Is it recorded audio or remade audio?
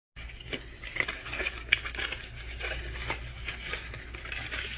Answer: recorded